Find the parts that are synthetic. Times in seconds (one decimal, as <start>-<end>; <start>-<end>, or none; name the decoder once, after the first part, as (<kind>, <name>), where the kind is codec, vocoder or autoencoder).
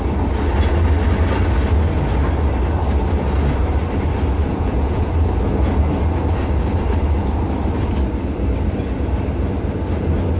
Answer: 4.5-5.1 (vocoder, Vocos)